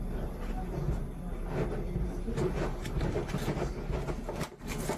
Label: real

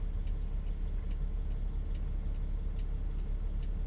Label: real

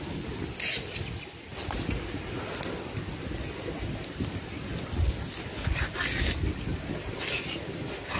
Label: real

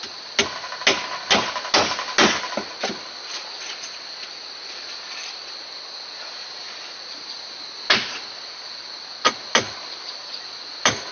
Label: real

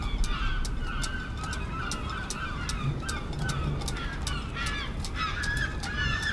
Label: real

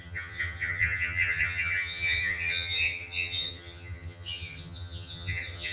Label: fake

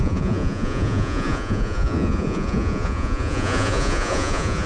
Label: fake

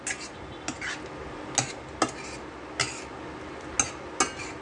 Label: real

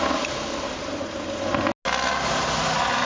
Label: real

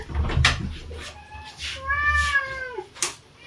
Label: real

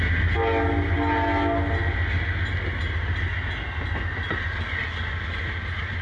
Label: real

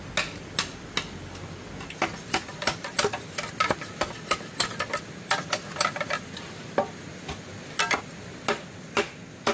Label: real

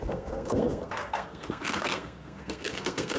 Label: fake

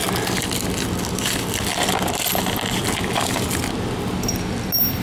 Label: real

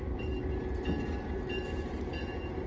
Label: fake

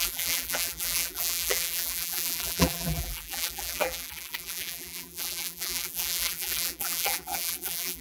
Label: fake